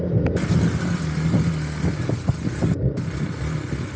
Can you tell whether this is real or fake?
real